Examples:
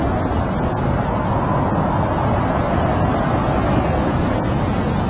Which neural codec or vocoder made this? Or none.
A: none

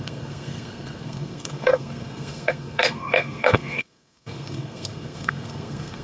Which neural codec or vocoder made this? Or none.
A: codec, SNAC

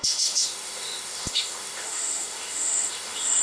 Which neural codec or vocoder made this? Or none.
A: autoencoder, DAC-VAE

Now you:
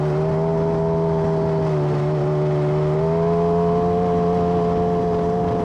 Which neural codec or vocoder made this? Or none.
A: none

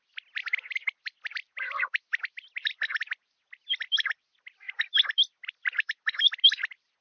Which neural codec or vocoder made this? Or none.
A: none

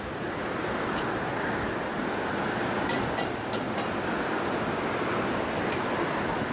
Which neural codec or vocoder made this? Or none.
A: none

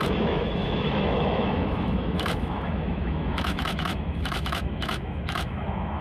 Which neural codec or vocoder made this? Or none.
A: autoencoder, DAC-VAE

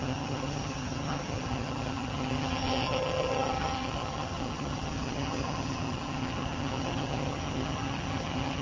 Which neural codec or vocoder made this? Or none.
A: vocoder, HiFi-GAN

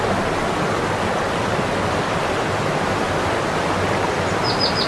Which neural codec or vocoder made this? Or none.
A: none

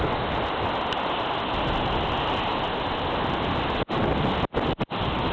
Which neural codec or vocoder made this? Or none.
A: none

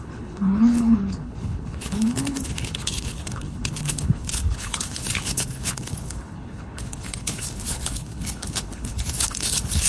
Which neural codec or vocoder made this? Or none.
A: codec, HILCodec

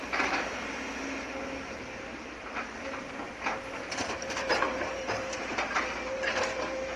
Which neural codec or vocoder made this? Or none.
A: vocoder, BigVGAN v2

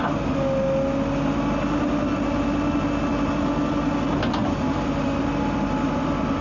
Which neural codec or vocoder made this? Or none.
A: none